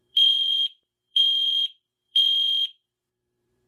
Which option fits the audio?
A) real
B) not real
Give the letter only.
B